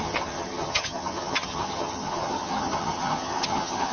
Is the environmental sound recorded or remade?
remade